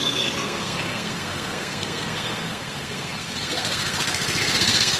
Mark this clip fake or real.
fake